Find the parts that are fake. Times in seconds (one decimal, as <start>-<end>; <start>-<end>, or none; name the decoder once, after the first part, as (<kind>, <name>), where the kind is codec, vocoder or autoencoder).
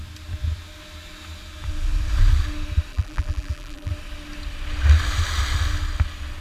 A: 2.9-3.9 (vocoder, BigVGAN v2)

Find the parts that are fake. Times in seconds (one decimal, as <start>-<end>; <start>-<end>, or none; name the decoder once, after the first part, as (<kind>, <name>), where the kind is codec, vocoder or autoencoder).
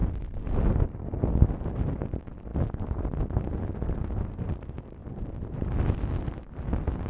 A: 0.0-5.0 (vocoder, BigVGAN v2); 6.2-7.1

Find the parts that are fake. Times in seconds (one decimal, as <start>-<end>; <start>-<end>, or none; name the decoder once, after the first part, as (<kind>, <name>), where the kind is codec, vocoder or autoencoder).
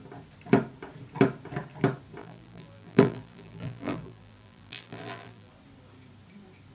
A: 2.2-5.5 (vocoder, BigVGAN v2)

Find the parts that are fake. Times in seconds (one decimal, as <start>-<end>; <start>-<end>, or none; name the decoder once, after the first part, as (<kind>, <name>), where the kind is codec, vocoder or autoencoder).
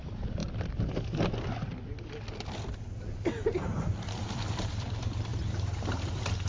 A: 0.0-0.4 (vocoder, BigVGAN v2); 4.2-6.5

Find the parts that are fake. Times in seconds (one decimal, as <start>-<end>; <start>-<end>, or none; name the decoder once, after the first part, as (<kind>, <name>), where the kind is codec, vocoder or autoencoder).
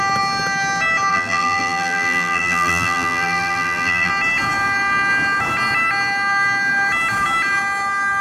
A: 1.1-4.1 (vocoder, BigVGAN v2)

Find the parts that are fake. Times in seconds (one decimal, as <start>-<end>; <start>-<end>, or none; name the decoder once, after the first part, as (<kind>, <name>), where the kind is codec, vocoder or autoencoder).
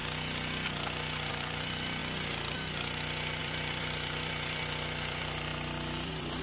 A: 1.3-2.0 (vocoder, BigVGAN v2); 3.4-6.4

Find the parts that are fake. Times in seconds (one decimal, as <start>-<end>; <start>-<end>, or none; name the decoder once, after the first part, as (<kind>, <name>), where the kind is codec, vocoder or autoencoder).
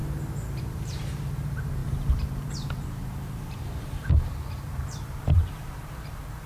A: 0.6-6.5 (vocoder, BigVGAN v2)